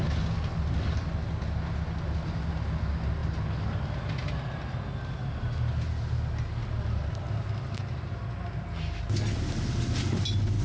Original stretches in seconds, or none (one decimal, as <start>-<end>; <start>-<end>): 0.0-10.6